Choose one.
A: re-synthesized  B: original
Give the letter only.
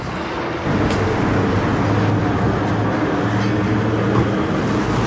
B